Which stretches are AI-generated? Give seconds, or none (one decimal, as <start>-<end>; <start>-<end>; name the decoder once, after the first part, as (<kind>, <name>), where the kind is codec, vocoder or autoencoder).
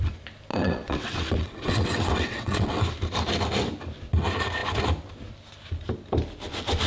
0.5-2.8 (vocoder, WaveNeXt)